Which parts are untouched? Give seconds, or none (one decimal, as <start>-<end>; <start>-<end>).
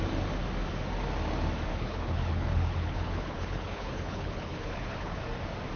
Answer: 0.0-1.7; 5.2-5.8